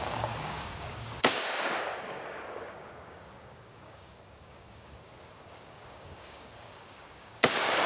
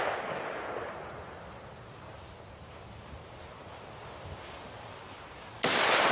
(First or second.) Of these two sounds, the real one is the second